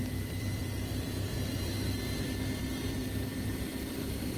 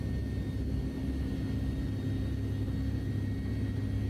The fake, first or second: first